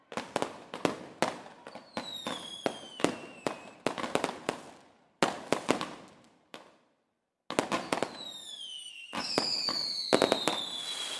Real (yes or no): yes